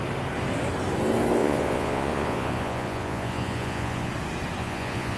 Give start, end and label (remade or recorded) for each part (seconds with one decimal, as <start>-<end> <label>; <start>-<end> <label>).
0.0-1.4 recorded; 1.4-4.1 remade; 4.1-4.6 recorded; 4.6-5.2 remade